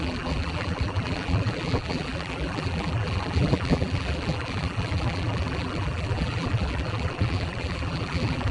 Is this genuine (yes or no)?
no